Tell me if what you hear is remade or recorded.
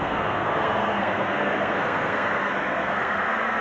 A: remade